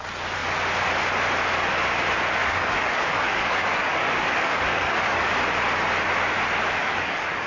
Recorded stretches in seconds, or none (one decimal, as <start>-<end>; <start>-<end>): 0.0-2.4; 5.3-6.8

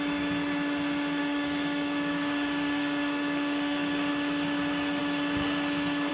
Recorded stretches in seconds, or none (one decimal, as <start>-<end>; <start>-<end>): 0.0-1.2; 4.1-6.1

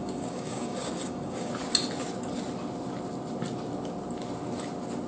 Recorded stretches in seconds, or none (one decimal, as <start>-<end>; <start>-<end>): 1.5-5.1

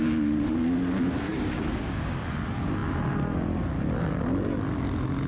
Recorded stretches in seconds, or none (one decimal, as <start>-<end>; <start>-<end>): 0.0-1.3; 2.2-5.3

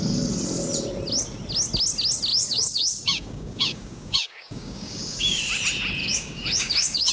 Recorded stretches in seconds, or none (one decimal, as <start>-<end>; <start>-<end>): 0.0-2.3; 5.4-6.0